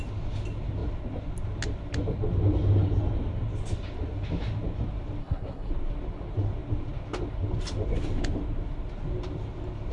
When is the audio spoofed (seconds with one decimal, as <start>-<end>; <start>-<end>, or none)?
5.2-5.7

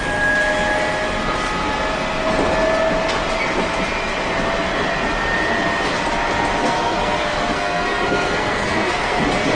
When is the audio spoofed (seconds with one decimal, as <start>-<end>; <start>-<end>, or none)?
6.6-9.2

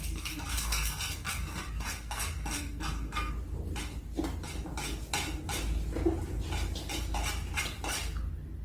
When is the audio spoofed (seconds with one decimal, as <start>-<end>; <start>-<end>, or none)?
0.0-3.3